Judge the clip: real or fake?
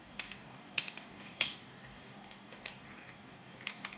fake